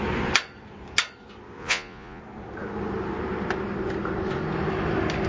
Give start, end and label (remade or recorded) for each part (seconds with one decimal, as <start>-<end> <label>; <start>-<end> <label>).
0.0-1.6 recorded; 1.6-2.2 remade; 2.2-5.3 recorded